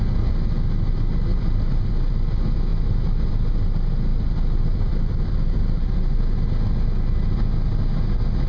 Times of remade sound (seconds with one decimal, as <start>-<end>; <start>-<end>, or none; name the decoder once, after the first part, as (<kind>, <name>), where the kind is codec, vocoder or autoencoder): 1.3-2.1 (vocoder, BigVGAN v2); 4.1-6.2